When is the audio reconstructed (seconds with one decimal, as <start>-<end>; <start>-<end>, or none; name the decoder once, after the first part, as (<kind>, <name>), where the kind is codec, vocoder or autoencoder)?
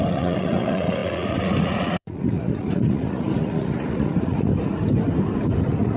0.0-4.5 (vocoder, Vocos); 5.6-6.0